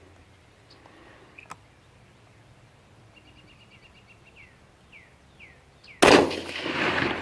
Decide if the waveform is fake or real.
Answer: real